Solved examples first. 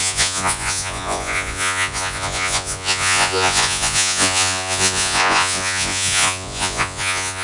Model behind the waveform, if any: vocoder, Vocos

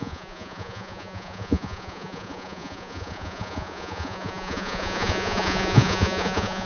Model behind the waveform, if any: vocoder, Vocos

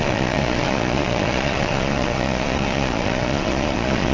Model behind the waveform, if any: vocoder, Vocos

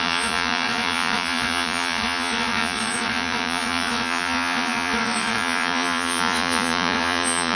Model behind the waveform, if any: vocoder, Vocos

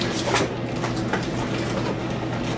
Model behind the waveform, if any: none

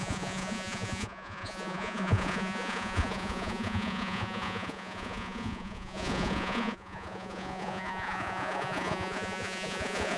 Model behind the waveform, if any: vocoder, Vocos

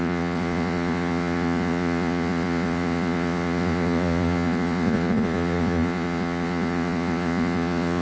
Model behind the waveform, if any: vocoder, Vocos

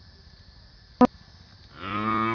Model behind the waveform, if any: none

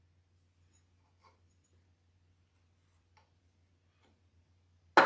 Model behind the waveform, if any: none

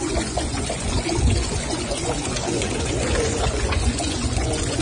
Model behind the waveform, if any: vocoder, Vocos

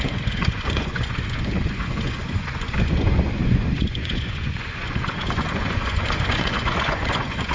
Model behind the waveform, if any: vocoder, Vocos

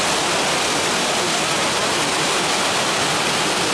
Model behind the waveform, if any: none